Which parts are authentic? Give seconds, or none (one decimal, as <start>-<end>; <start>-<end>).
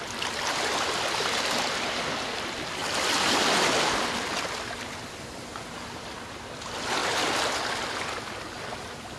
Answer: 0.0-9.2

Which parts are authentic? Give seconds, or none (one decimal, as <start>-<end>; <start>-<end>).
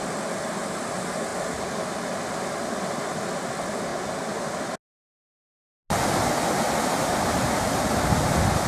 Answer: 0.0-8.7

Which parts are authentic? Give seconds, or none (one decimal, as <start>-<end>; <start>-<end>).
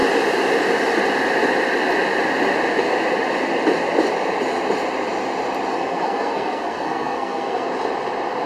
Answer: 0.0-5.7; 7.7-8.5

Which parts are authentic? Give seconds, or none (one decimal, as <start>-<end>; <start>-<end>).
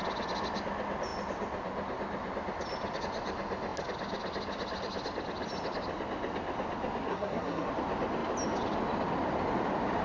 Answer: 0.0-7.1; 7.7-10.0